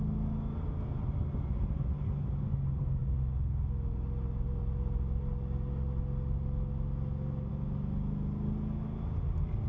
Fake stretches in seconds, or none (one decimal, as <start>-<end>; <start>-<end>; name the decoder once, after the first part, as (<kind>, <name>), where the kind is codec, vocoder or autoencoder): none